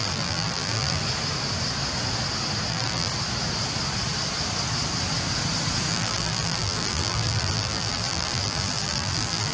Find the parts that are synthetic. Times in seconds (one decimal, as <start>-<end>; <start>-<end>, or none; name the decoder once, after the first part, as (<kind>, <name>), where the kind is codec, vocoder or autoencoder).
0.0-1.0 (vocoder, BigVGAN v2); 2.7-3.1; 5.9-9.5

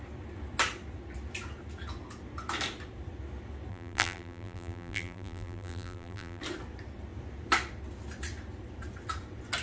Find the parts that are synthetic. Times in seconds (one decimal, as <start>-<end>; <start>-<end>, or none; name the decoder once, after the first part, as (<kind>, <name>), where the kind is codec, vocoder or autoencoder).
3.7-6.4 (vocoder, BigVGAN v2)

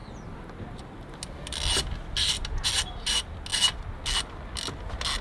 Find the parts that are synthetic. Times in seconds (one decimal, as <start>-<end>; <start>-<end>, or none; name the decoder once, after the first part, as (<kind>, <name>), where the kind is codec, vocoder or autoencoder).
none

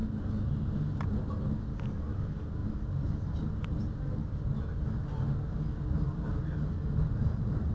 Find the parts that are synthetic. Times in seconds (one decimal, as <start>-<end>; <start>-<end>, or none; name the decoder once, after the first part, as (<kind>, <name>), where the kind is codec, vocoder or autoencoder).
none

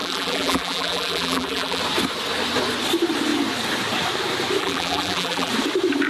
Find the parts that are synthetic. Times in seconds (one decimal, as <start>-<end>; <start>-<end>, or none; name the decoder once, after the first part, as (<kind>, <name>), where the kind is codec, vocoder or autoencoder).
0.0-1.8 (vocoder, BigVGAN v2); 4.6-5.5

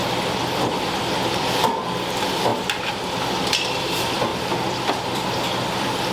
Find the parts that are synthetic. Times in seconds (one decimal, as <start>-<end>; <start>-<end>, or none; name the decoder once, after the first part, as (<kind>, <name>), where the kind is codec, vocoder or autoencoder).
0.7-6.1 (vocoder, BigVGAN v2)

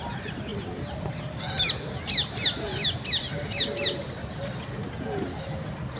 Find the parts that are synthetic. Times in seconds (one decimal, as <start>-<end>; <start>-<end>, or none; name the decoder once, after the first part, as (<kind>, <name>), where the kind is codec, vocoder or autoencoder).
none